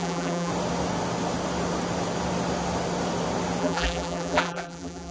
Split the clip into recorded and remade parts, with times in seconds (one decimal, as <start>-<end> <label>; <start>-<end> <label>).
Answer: 0.0-0.5 remade; 0.5-3.6 recorded; 3.6-5.1 remade

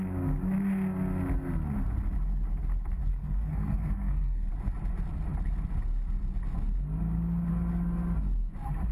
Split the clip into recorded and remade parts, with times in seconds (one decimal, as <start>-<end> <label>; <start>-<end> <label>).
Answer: 0.0-3.1 recorded; 3.1-4.5 remade; 4.5-8.9 recorded

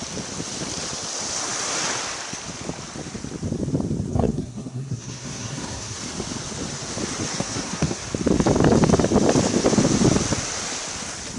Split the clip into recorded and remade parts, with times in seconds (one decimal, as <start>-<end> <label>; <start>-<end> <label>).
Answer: 0.0-4.1 recorded; 4.1-6.0 remade; 6.0-7.3 recorded; 7.3-8.0 remade; 8.0-11.4 recorded

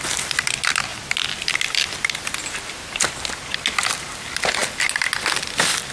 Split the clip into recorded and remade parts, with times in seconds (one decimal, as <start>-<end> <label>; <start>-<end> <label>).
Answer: 0.0-5.9 recorded

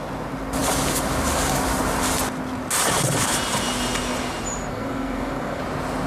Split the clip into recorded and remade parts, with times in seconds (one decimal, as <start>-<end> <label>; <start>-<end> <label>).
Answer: 0.0-4.7 recorded; 4.7-5.6 remade; 5.6-6.1 recorded